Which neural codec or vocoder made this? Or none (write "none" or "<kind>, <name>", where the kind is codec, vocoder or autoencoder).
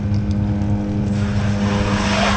none